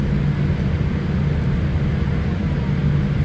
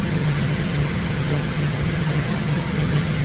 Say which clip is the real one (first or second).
first